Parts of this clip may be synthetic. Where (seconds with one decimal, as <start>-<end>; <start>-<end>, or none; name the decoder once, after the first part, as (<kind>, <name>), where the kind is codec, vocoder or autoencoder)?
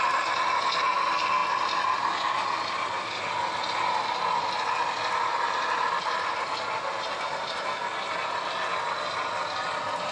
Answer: none